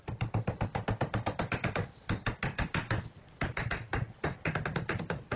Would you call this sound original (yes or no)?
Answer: yes